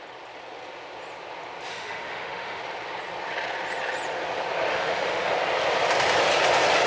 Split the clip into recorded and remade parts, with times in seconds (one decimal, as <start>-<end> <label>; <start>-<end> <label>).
0.0-1.7 recorded; 1.7-2.6 remade; 2.6-4.7 recorded; 4.7-5.3 remade; 5.3-6.9 recorded